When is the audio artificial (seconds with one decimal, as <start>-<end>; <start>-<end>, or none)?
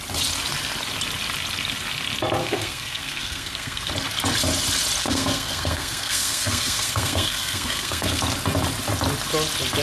2.4-3.9; 5.0-8.2